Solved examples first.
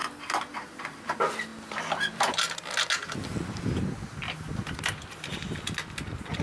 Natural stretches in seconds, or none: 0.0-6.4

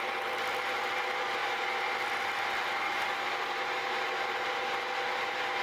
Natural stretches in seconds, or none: 0.0-1.4; 2.7-5.6

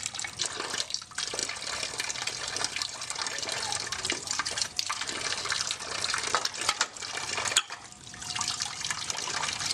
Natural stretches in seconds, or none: 0.0-9.7